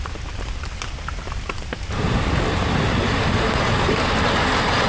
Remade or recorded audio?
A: remade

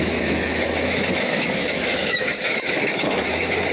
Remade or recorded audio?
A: remade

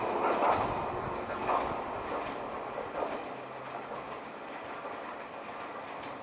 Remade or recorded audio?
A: recorded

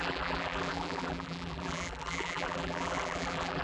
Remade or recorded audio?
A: remade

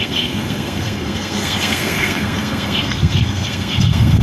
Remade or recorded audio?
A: remade